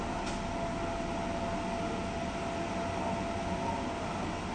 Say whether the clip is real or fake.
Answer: real